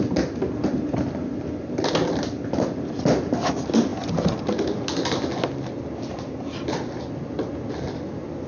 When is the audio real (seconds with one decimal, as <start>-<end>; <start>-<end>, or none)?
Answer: 0.0-8.5

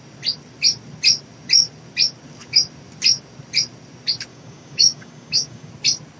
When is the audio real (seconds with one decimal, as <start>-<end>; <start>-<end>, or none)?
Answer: 0.0-4.3; 5.7-6.2

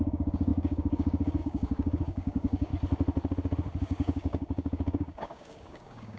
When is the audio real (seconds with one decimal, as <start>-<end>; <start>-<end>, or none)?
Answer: 2.7-3.8